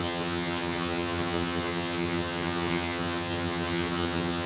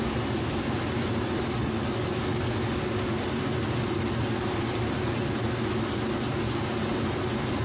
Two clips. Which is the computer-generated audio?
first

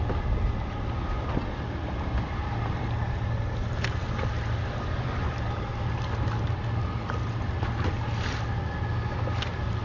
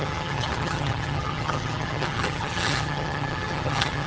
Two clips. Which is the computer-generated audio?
second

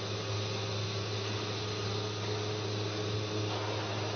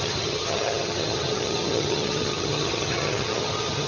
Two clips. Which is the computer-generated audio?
second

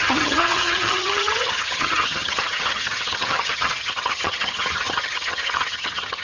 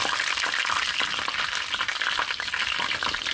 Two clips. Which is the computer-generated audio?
first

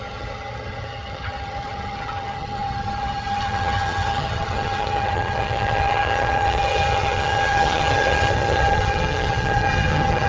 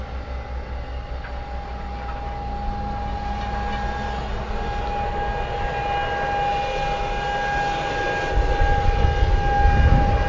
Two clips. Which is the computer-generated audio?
first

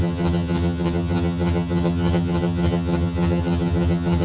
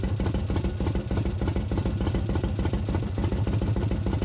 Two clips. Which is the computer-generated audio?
first